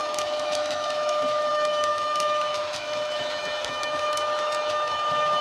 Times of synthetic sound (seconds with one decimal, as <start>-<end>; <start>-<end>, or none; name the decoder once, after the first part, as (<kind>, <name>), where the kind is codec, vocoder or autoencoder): 0.0-5.4 (autoencoder, DAC-VAE)